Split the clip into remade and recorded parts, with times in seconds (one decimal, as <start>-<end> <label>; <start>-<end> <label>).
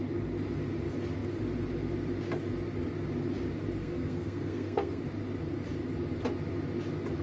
0.0-3.8 recorded; 3.8-5.0 remade; 5.0-7.2 recorded